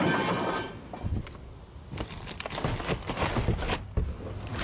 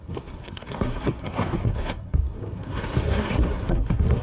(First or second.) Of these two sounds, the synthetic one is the second